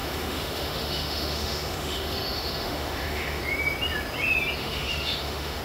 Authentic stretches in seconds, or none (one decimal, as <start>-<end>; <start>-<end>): 3.4-4.6